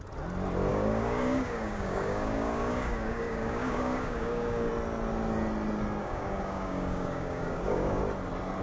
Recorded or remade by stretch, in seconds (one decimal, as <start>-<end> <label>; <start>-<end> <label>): 0.0-0.7 recorded; 0.7-4.7 remade; 4.7-6.0 recorded; 6.0-8.0 remade; 8.0-8.6 recorded